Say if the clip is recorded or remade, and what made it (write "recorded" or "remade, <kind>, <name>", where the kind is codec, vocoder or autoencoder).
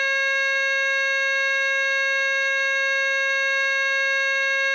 remade, autoencoder, DAC-VAE